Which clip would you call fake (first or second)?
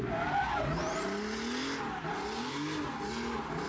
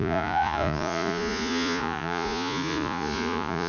second